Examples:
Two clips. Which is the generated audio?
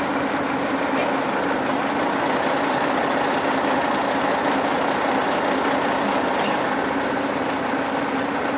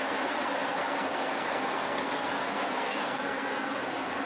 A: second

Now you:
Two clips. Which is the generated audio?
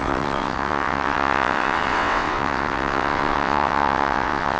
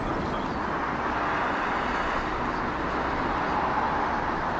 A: first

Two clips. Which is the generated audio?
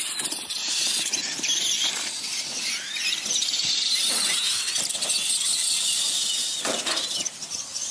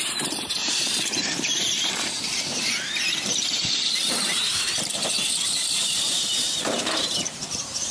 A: second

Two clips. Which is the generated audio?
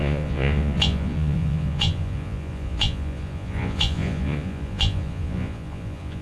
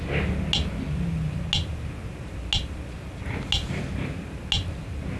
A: first